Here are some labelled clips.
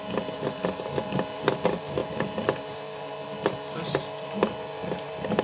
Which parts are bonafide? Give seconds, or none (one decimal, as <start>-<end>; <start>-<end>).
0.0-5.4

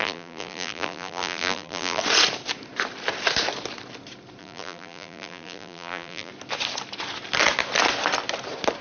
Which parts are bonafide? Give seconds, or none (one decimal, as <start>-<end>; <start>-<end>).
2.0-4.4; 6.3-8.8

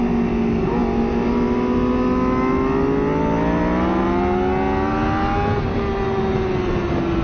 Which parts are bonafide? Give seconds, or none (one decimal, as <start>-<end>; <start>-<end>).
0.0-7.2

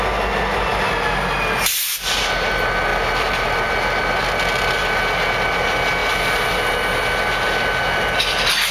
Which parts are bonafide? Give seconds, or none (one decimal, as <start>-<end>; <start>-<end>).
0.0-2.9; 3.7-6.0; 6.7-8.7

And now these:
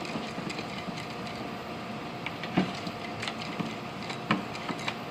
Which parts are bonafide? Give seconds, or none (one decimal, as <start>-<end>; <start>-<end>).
0.0-1.6; 3.2-5.1

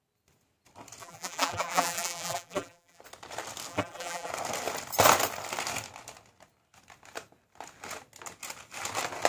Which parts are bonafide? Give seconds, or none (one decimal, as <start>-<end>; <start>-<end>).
0.0-1.0; 3.0-3.7; 4.3-9.3